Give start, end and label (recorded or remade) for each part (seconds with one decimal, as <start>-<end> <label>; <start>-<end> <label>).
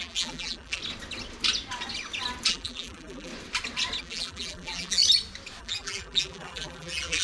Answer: 0.0-0.8 remade; 0.8-2.5 recorded; 2.5-3.3 remade; 3.3-4.0 recorded; 4.0-5.0 remade; 5.0-5.6 recorded; 5.6-7.2 remade